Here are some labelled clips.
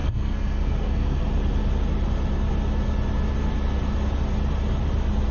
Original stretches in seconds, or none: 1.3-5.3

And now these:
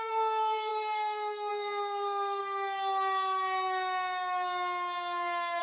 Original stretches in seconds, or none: 2.4-5.6

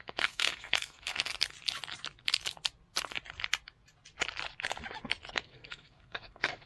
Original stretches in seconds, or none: 1.3-5.3

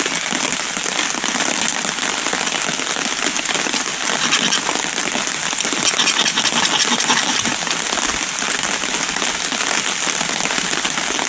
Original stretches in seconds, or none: 0.0-11.3

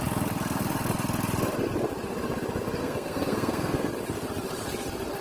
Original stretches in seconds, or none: 0.0-2.8; 3.9-5.2